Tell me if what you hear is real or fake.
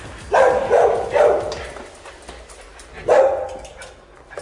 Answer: real